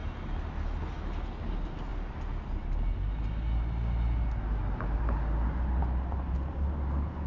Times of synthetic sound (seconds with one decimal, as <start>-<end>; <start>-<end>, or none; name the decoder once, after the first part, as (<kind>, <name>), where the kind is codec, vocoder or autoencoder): none